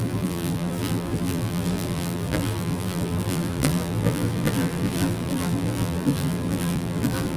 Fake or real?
fake